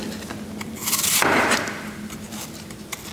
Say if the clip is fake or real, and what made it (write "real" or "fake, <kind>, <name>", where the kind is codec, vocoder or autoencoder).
real